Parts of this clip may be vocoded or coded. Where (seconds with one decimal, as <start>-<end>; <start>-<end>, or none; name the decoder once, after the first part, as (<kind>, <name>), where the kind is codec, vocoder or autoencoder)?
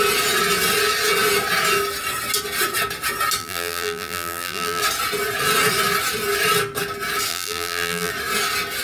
3.4-4.8 (vocoder, BigVGAN v2); 7.3-8.1